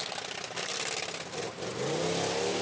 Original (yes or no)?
yes